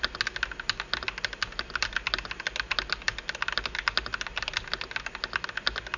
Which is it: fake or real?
real